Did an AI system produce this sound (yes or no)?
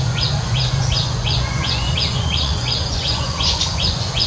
yes